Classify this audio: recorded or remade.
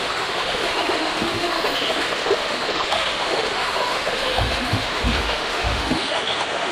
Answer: remade